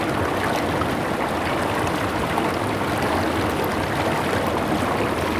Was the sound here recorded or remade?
recorded